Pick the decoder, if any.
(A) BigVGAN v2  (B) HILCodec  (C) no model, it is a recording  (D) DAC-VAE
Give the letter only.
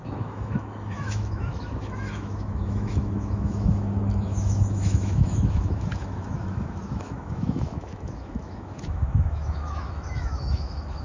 D